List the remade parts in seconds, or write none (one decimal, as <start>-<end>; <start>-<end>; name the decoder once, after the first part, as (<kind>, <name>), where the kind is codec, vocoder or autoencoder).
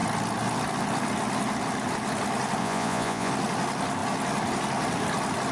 2.6-3.3 (vocoder, Vocos)